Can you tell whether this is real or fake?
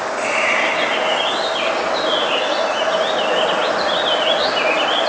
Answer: real